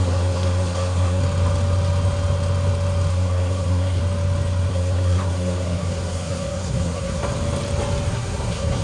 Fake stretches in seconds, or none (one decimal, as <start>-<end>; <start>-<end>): 0.0-1.2; 3.1-4.0; 4.7-7.2; 8.1-8.8